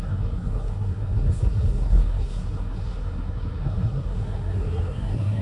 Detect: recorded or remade remade